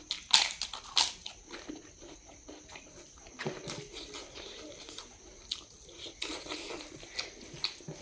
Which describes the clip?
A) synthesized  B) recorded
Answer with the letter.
B